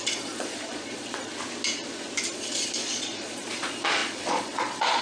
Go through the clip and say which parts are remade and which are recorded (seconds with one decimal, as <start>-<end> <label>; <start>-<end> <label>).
0.0-1.3 remade; 1.3-2.3 recorded; 2.3-5.0 remade